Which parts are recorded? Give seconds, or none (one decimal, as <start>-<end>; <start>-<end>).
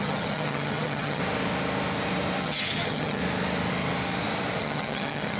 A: 1.2-2.4; 3.2-4.6